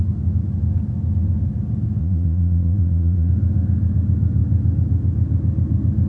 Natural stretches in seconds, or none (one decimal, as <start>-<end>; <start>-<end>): 0.0-2.0; 3.3-6.1

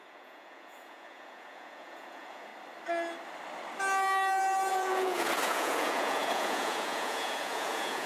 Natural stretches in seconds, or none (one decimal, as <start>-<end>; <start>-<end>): 2.5-4.7